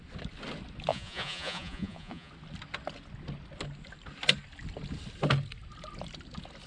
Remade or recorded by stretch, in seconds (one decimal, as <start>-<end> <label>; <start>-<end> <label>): 0.0-0.9 recorded; 0.9-2.3 remade; 2.3-6.7 recorded